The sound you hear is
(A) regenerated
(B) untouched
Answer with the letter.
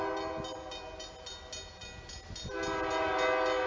B